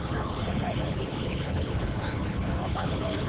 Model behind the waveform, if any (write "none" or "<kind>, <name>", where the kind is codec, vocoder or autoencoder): codec, HILCodec